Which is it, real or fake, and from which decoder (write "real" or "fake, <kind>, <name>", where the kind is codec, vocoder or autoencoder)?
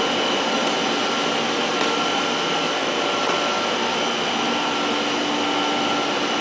real